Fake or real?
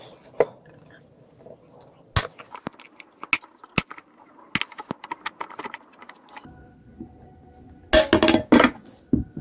real